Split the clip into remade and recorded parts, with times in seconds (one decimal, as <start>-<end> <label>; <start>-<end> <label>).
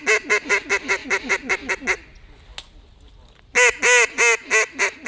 0.0-5.1 recorded